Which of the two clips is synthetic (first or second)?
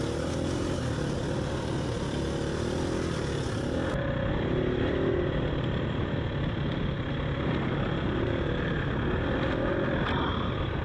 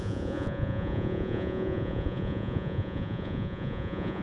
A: second